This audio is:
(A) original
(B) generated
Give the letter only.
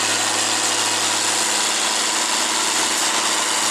A